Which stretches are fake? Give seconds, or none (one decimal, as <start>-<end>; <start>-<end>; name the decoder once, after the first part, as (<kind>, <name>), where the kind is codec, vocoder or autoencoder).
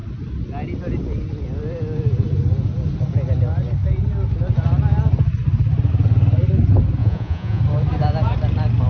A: 7.0-7.6 (vocoder, Vocos)